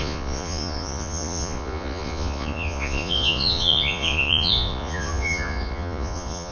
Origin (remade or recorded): remade